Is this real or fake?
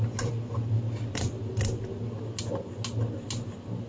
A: real